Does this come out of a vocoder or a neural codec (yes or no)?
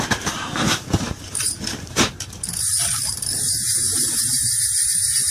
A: yes